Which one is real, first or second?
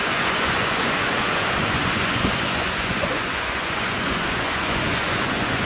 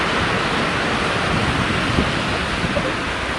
second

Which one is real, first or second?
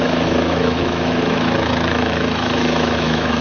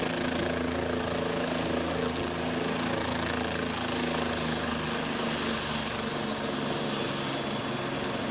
second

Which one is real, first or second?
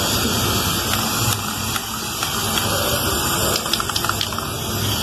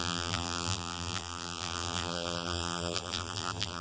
first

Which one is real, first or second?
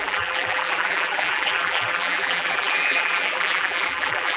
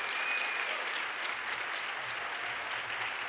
second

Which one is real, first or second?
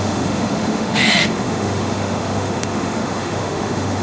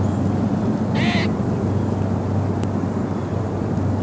second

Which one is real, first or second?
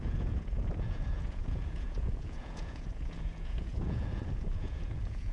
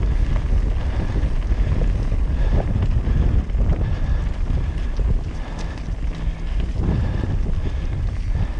second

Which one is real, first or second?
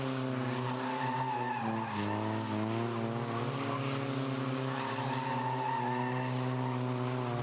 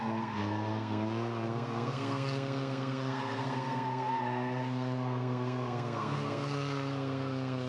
first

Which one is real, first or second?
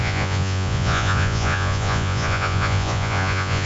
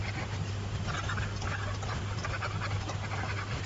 second